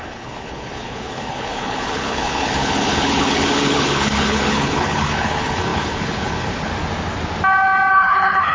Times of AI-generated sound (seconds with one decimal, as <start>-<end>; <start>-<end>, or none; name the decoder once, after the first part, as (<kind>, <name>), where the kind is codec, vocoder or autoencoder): 0.0-6.7 (codec, HILCodec); 7.9-8.5